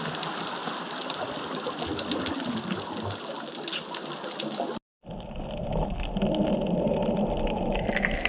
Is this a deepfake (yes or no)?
no